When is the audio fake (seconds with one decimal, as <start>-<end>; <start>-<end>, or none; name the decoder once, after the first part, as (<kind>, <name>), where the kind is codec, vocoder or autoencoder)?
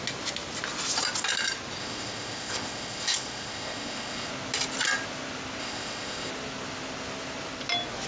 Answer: 1.8-4.3 (codec, ZipCodec); 5.6-6.3